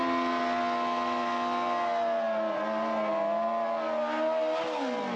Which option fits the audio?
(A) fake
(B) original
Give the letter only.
B